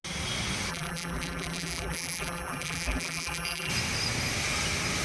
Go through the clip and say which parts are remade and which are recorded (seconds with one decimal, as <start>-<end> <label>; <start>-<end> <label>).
0.0-0.7 recorded; 0.7-3.7 remade; 3.7-5.0 recorded